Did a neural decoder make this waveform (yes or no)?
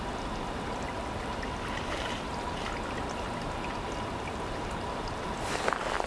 no